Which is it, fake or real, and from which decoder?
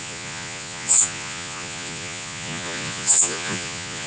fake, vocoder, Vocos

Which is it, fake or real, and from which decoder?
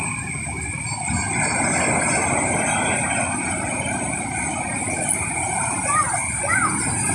real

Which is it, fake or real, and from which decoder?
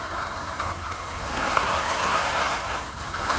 fake, codec, SNAC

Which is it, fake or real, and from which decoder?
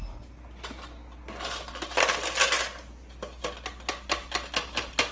real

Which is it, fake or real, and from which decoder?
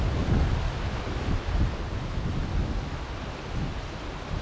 real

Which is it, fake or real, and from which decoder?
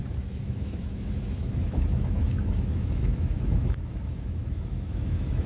fake, autoencoder, DAC-VAE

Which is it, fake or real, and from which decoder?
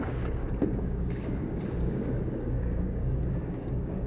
fake, codec, DAC